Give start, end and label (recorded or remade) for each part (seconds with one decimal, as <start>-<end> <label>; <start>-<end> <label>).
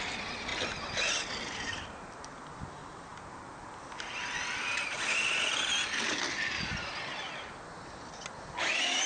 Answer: 0.0-9.1 recorded